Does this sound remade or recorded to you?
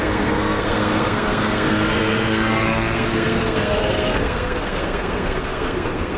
remade